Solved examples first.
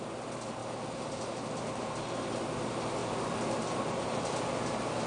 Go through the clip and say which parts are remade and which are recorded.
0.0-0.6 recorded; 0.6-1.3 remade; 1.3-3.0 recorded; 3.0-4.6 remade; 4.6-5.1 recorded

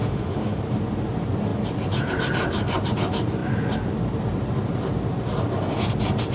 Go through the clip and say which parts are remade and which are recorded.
0.0-0.6 remade; 0.6-6.3 recorded